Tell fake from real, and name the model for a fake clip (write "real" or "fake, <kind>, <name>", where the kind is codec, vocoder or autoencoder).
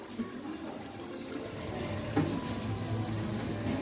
real